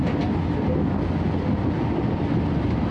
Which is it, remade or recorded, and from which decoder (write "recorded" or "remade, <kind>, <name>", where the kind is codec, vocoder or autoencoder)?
recorded